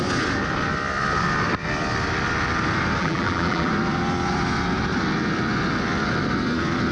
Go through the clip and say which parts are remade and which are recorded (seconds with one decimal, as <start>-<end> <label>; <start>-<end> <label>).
0.0-3.0 recorded; 3.0-3.7 remade; 3.7-6.9 recorded